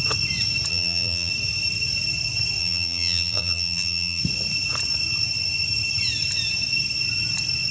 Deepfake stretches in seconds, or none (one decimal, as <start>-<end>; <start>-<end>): 0.7-1.3; 2.6-4.2

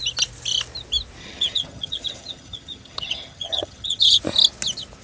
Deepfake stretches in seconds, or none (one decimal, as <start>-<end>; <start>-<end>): 1.2-4.2